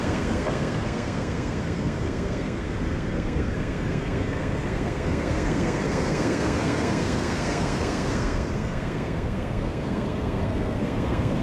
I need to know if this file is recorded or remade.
remade